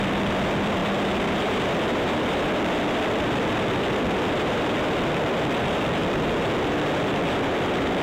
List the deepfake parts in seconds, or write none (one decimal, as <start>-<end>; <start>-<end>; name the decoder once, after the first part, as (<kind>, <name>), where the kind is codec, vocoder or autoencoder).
0.0-8.0 (vocoder, BigVGAN v2)